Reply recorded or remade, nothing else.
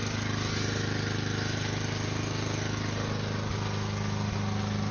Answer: recorded